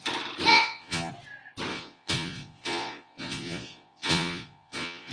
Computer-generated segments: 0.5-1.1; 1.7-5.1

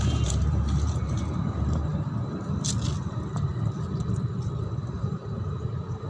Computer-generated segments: 0.0-1.9; 3.0-3.5; 4.6-5.2

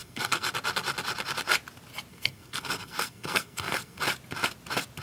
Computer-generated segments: 0.0-0.5; 2.1-4.0

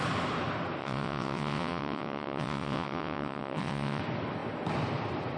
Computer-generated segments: 0.8-4.0

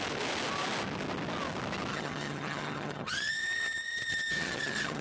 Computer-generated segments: 1.9-5.0

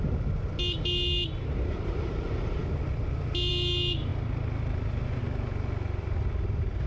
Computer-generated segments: 1.5-2.1

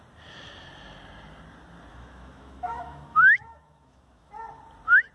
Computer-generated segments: 1.9-4.3

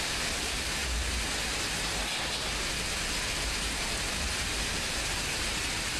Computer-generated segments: 0.0-0.8; 4.3-6.0